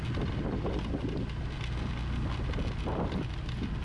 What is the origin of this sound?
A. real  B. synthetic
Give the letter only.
A